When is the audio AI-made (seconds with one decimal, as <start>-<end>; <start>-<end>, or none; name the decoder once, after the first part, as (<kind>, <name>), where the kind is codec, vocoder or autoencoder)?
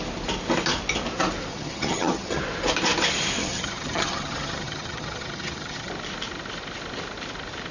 1.5-2.4 (vocoder, HiFi-GAN); 3.4-5.9